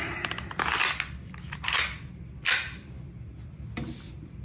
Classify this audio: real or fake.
real